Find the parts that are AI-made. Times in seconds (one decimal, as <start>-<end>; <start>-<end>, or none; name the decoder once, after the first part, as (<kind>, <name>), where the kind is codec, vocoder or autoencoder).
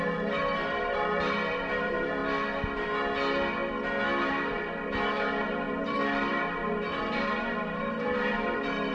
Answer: 0.0-2.2 (vocoder, BigVGAN v2); 4.3-8.9